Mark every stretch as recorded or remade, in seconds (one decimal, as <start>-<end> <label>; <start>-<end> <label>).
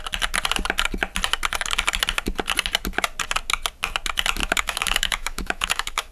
0.0-4.4 recorded; 4.4-6.1 remade